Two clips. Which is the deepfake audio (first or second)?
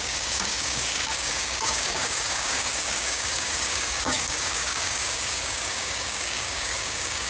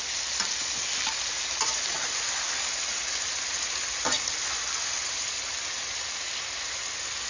first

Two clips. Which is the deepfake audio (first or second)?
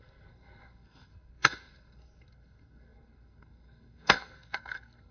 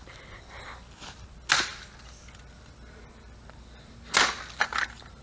first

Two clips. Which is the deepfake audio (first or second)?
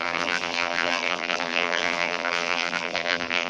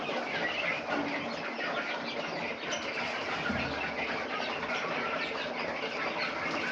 first